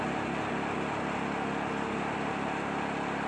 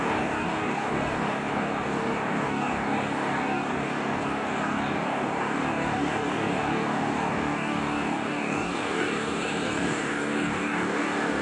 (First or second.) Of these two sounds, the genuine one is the first